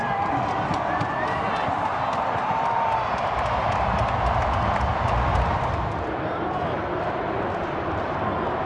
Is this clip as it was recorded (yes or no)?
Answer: no